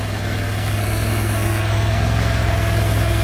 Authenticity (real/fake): fake